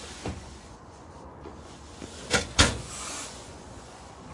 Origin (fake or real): fake